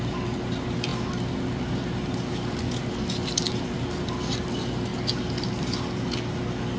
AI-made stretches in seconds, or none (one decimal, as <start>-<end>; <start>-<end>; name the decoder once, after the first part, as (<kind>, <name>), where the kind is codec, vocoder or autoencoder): none